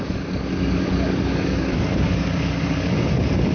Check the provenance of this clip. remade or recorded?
remade